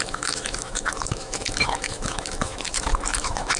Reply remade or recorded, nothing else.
remade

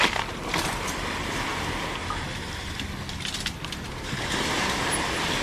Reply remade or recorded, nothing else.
recorded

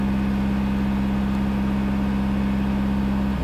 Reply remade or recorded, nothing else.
recorded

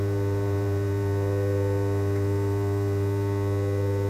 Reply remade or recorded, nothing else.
recorded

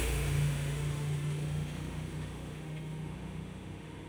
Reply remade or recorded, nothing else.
remade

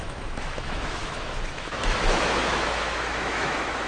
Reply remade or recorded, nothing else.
remade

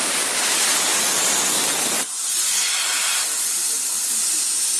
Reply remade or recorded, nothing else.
recorded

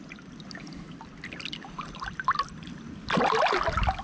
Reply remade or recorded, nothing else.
recorded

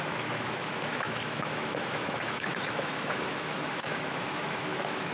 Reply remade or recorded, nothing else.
remade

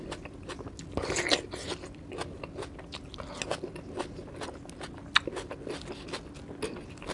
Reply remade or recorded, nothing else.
recorded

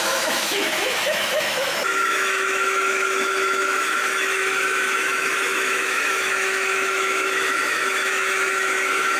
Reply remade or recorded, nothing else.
remade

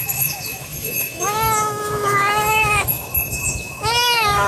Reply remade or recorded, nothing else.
remade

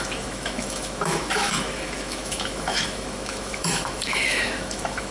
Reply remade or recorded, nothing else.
remade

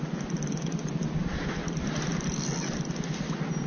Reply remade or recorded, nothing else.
recorded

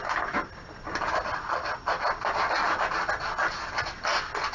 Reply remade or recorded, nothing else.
recorded